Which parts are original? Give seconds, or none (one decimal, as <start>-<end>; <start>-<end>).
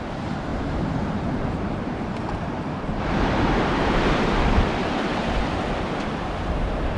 0.0-0.5; 4.3-4.8; 5.4-7.0